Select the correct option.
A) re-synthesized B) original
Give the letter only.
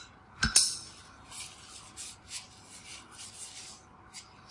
B